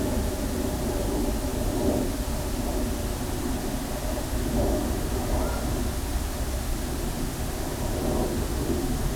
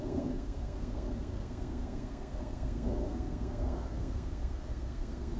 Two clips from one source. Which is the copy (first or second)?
second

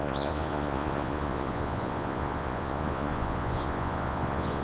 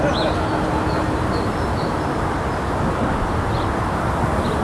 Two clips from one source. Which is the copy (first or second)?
first